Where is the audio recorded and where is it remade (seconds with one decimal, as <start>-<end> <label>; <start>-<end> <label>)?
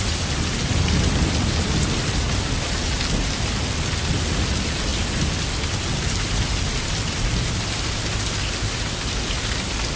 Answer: 0.0-10.0 recorded